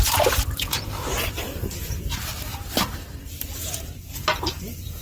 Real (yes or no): no